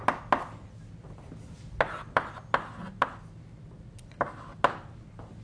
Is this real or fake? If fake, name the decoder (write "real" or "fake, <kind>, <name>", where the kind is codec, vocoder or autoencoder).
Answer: real